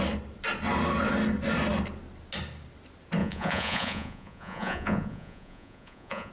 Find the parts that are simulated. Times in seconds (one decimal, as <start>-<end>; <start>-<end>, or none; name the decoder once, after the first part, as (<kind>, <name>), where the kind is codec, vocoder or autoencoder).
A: 3.2-6.3 (vocoder, Vocos)